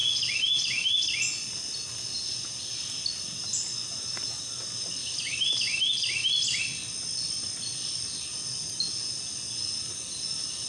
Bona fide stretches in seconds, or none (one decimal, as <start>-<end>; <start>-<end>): 0.0-10.7